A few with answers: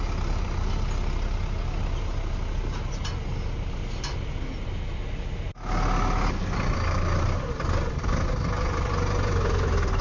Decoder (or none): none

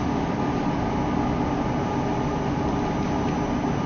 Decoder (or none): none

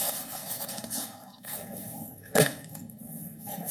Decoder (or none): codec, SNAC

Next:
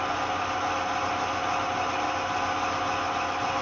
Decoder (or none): none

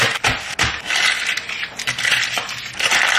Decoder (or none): none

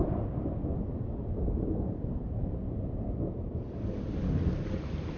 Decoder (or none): vocoder, BigVGAN v2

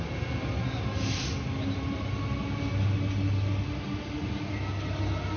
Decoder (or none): none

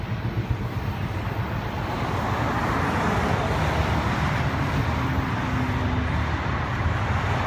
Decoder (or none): none